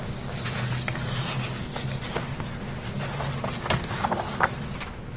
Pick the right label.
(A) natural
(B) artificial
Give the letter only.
A